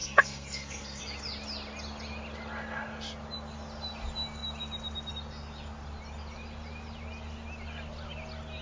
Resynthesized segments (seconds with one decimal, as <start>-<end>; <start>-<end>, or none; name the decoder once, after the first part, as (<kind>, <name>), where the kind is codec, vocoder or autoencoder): 0.0-1.0 (codec, SNAC)